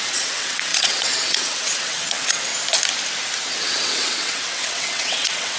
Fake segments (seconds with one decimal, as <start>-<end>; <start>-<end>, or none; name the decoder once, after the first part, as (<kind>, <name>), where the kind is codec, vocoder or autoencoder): 0.0-2.5 (vocoder, WaveNeXt); 3.6-5.6